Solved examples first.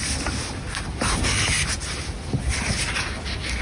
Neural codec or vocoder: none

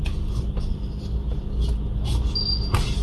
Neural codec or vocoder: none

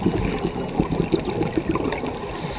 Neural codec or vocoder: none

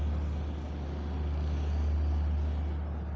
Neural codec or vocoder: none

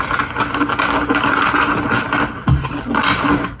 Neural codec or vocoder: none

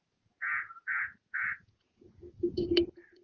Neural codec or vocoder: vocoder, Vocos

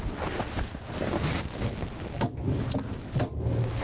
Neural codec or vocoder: none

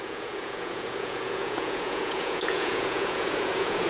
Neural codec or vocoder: vocoder, Vocos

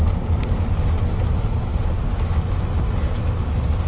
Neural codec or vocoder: none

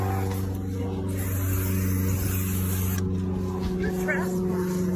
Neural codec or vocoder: none